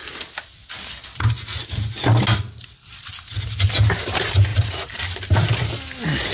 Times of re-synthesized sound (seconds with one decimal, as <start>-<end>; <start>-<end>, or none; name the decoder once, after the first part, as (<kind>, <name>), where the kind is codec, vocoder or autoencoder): 4.5-5.7 (vocoder, BigVGAN v2)